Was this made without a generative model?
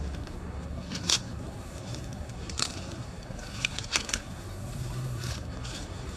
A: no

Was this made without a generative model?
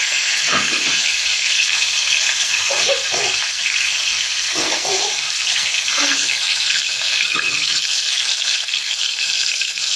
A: no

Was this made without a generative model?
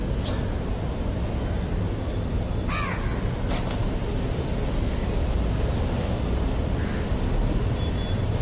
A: yes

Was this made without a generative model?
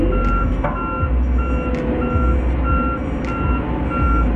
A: yes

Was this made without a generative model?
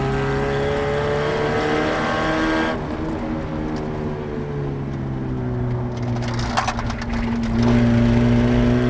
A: yes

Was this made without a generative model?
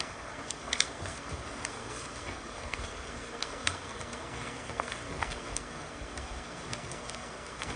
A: no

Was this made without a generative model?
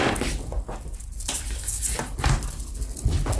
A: yes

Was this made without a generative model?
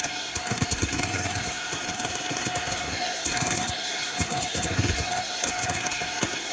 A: no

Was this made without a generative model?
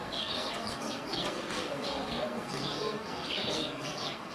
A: no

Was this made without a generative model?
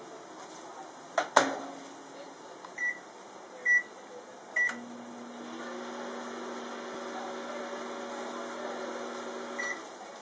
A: yes